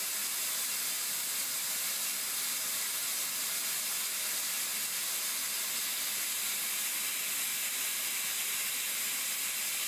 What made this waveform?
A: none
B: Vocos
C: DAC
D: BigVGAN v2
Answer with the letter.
A